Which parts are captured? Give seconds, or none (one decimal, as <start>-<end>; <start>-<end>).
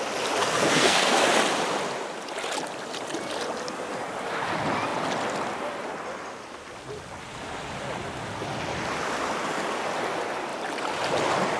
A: 0.0-0.4; 1.3-11.6